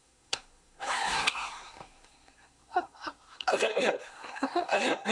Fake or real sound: fake